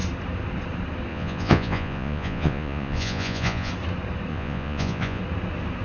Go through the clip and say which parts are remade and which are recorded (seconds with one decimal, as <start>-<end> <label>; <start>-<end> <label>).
0.0-1.1 recorded; 1.1-3.7 remade; 3.7-4.3 recorded; 4.3-5.2 remade; 5.2-5.8 recorded

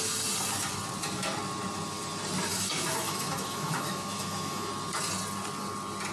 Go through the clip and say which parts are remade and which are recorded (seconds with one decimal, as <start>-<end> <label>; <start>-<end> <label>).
0.0-2.5 recorded; 2.5-4.7 remade; 4.7-6.1 recorded

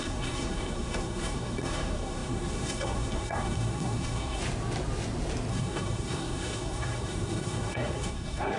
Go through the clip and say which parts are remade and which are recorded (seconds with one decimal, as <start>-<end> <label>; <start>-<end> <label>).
0.0-4.4 remade; 4.4-5.5 recorded; 5.5-8.6 remade

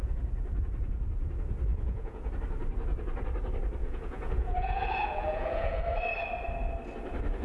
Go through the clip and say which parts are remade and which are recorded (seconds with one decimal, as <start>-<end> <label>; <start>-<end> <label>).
0.0-1.7 recorded; 1.7-2.3 remade; 2.3-3.8 recorded; 3.8-5.8 remade; 5.8-7.4 recorded

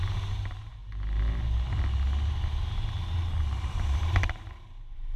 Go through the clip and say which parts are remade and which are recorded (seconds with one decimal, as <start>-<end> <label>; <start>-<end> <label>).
0.0-0.8 remade; 0.8-3.6 recorded; 3.6-5.2 remade

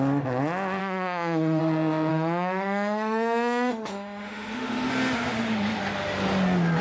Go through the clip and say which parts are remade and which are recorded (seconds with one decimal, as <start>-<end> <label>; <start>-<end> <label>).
0.0-0.8 recorded; 0.8-1.6 remade; 1.6-2.1 recorded; 2.1-4.9 remade; 4.9-6.8 recorded

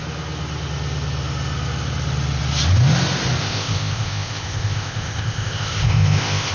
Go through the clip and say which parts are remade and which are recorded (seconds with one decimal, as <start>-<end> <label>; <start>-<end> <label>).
0.0-3.4 recorded; 3.4-6.5 remade

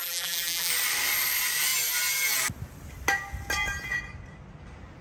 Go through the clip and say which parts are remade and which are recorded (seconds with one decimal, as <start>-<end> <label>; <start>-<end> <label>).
0.0-0.7 remade; 0.7-5.0 recorded